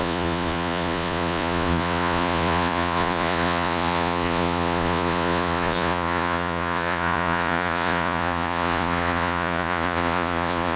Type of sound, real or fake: fake